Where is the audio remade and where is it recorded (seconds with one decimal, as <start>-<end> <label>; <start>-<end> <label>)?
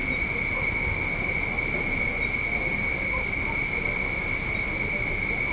0.0-5.5 recorded